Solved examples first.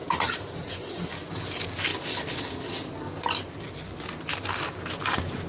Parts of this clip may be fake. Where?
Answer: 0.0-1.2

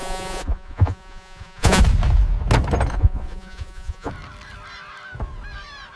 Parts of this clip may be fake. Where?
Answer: 0.0-1.8; 2.9-4.1

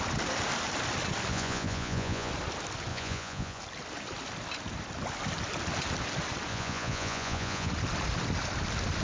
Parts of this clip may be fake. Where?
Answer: 1.3-2.3; 2.9-3.6; 6.5-7.7

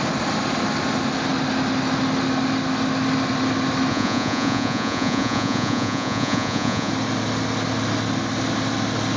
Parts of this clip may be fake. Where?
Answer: 3.9-6.9

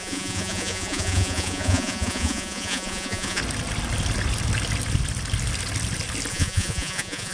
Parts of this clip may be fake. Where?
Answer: 0.0-3.4; 6.3-7.3

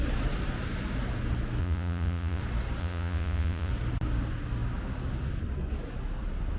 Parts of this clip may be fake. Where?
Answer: 1.6-2.4; 2.8-3.7